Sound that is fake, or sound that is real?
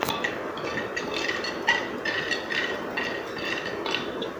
real